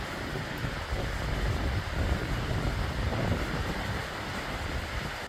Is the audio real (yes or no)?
yes